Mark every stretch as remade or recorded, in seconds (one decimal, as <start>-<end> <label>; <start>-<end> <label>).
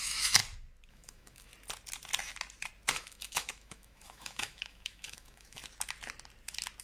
0.0-0.4 remade; 0.4-0.9 recorded; 0.9-1.5 remade; 1.5-2.9 recorded; 2.9-5.6 remade; 5.6-6.8 recorded